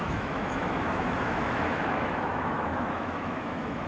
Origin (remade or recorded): remade